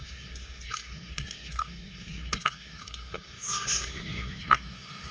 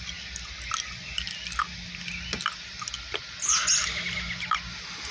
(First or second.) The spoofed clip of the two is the first